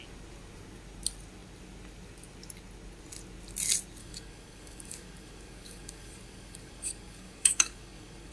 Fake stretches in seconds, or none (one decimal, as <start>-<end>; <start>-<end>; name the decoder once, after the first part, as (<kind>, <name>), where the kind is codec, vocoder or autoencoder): 4.0-8.3 (codec, DAC)

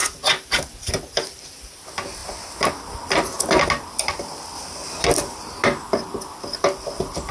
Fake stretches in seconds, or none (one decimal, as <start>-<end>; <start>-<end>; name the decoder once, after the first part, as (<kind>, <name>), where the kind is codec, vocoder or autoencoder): none

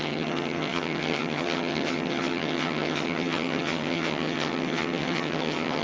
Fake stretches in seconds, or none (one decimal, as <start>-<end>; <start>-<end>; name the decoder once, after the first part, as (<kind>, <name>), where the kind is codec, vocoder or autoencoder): 0.0-5.8 (vocoder, HiFi-GAN)

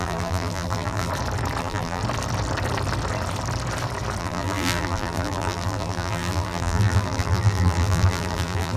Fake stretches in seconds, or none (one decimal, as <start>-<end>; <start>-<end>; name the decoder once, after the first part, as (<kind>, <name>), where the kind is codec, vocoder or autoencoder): 0.0-1.1 (vocoder, BigVGAN v2); 1.6-2.0; 4.2-8.8

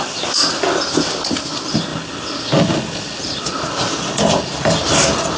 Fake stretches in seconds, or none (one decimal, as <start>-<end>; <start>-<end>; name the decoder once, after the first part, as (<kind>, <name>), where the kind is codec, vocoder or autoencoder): none

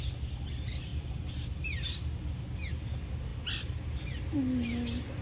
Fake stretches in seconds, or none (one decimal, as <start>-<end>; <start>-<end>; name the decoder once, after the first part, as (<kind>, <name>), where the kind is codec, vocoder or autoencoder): none